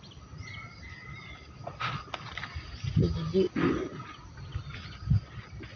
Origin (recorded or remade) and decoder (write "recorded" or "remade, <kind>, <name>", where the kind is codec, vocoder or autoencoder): recorded